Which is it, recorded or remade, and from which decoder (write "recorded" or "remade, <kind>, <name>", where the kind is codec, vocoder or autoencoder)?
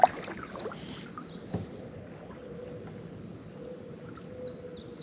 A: recorded